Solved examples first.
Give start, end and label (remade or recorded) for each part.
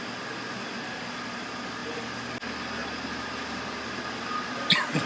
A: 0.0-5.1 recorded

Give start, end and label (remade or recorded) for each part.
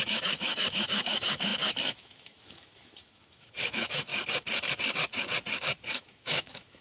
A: 0.0-4.1 remade; 4.1-5.9 recorded; 5.9-6.8 remade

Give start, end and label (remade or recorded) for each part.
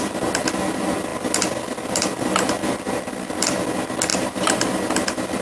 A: 0.0-1.1 recorded; 1.1-2.5 remade; 2.5-4.1 recorded; 4.1-5.4 remade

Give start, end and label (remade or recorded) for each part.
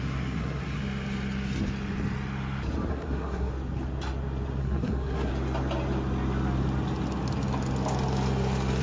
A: 0.0-0.8 remade; 0.8-2.9 recorded; 2.9-3.5 remade; 3.5-4.6 recorded; 4.6-5.3 remade; 5.3-8.8 recorded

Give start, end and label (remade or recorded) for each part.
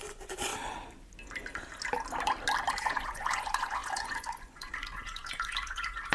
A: 0.0-0.5 remade; 0.5-2.8 recorded; 2.8-6.1 remade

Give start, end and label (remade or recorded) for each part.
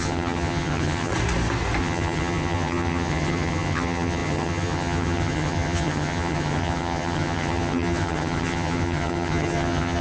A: 0.0-1.1 remade; 1.1-1.8 recorded; 1.8-10.0 remade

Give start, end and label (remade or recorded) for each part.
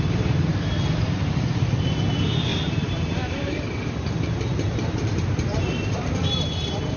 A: 0.0-2.5 recorded; 2.5-7.0 remade